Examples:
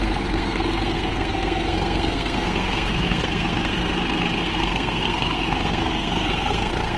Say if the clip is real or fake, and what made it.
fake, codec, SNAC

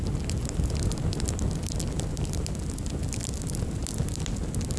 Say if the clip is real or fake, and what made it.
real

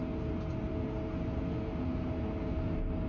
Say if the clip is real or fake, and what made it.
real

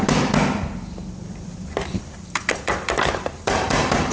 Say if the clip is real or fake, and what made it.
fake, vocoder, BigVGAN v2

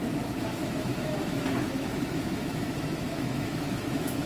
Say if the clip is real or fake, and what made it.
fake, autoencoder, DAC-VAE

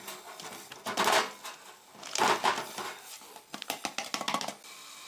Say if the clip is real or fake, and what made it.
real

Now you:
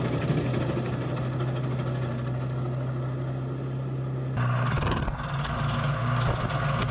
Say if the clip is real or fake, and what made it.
real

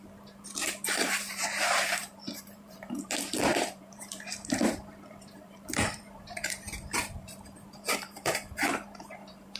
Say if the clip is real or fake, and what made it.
fake, vocoder, BigVGAN v2